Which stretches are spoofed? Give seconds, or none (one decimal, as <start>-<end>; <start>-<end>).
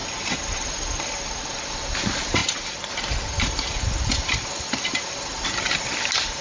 none